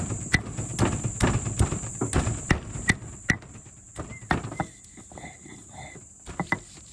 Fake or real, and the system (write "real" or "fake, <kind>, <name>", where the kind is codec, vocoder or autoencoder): real